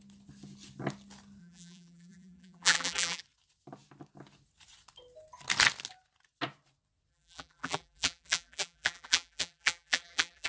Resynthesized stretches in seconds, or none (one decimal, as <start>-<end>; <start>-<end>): 1.4-3.2; 7.1-10.5